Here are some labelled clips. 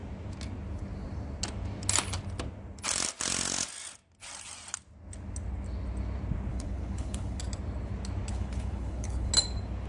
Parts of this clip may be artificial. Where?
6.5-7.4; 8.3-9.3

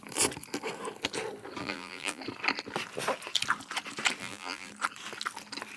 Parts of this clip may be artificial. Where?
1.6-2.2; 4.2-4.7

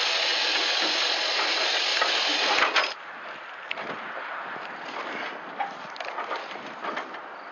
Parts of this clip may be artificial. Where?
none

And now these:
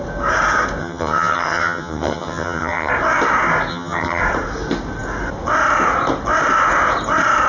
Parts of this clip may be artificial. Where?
0.8-2.9; 3.7-4.2

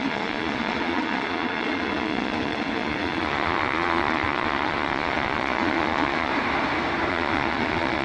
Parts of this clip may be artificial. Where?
0.0-6.3; 7.1-8.0

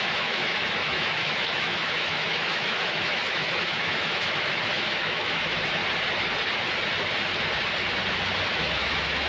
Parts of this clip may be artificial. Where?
0.0-5.8; 8.5-9.3